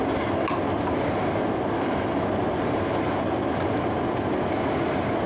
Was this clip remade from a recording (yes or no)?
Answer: no